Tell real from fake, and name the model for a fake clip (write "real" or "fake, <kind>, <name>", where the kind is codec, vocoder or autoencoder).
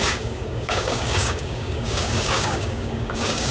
fake, codec, DAC